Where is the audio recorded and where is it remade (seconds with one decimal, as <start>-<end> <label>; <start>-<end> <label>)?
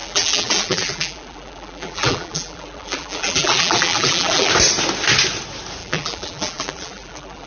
0.0-4.5 remade; 4.5-5.8 recorded; 5.8-7.5 remade